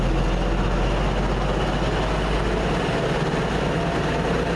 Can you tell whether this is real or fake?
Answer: real